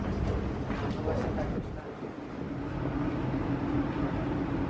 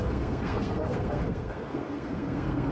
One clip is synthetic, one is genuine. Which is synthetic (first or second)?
second